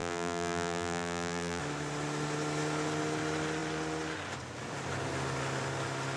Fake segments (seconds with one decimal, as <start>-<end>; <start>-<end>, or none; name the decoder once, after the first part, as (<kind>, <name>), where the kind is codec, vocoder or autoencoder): 0.0-1.6 (vocoder, BigVGAN v2)